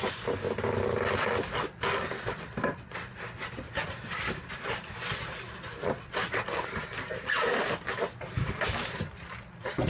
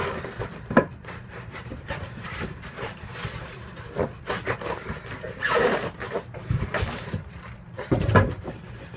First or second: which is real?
first